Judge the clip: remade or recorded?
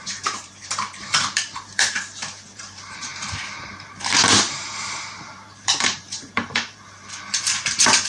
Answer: remade